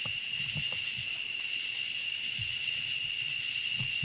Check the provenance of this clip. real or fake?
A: real